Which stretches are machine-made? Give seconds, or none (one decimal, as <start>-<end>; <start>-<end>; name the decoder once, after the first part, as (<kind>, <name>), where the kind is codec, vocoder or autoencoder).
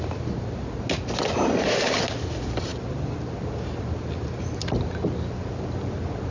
none